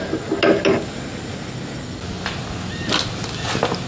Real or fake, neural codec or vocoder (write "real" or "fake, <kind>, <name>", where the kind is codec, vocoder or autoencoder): real